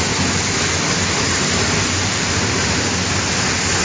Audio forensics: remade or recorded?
recorded